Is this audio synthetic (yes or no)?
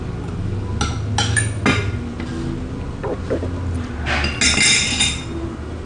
no